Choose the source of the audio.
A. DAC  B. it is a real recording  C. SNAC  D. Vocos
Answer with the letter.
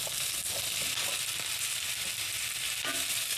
B